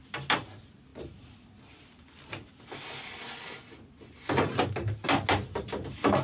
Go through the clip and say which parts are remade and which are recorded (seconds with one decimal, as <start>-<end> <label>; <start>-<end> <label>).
0.0-6.2 recorded